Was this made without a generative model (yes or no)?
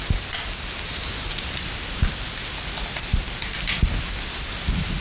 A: yes